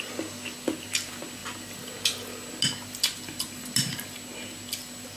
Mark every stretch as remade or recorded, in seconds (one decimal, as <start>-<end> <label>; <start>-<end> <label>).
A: 0.0-5.2 recorded